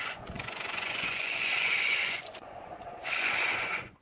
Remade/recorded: remade